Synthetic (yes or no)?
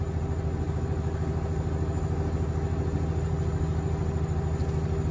no